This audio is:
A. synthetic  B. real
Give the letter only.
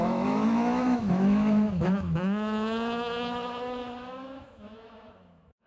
A